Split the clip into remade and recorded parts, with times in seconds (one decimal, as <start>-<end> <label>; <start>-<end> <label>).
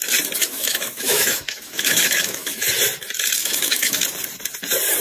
0.0-0.4 recorded; 0.4-2.7 remade; 2.7-3.4 recorded; 3.4-4.0 remade; 4.0-5.0 recorded